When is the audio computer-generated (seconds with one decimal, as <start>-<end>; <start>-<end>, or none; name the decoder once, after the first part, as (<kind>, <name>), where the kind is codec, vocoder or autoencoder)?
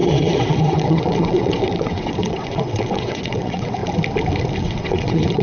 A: 0.0-3.8 (vocoder, WaveNeXt); 4.6-5.4